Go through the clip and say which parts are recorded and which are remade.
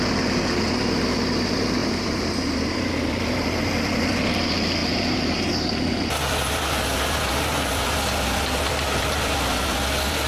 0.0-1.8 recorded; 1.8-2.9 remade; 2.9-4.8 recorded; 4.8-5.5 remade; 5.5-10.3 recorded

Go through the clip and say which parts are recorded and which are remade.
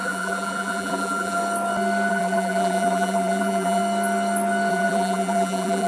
0.0-1.4 remade; 1.4-2.1 recorded; 2.1-3.8 remade; 3.8-4.7 recorded; 4.7-5.9 remade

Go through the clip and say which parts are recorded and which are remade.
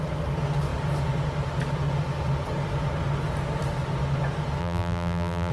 0.0-4.6 recorded; 4.6-5.5 remade